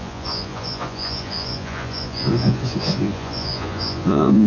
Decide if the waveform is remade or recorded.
remade